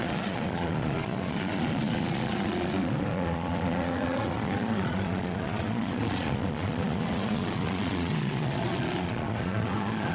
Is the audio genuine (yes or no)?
no